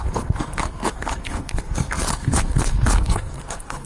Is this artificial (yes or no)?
yes